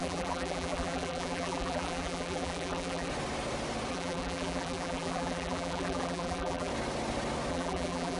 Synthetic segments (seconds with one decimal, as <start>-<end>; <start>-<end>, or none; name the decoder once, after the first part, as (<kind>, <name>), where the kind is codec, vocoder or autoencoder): 0.0-3.1 (vocoder, BigVGAN v2); 3.9-6.7; 7.5-8.2